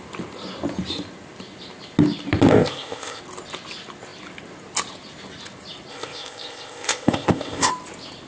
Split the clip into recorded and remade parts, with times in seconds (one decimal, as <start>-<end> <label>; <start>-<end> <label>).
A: 0.0-2.5 recorded; 2.5-3.2 remade; 3.2-5.9 recorded; 5.9-7.7 remade; 7.7-8.3 recorded